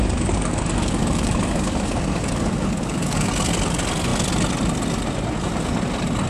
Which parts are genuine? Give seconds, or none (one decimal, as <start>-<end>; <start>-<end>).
3.3-6.3